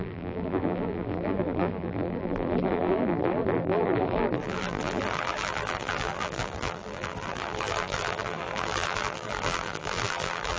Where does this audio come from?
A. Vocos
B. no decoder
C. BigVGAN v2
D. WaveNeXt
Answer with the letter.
C